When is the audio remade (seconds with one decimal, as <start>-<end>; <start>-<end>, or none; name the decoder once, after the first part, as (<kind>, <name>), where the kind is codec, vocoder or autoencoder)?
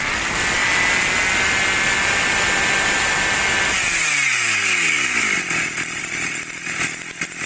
none